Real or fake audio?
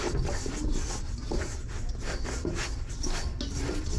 real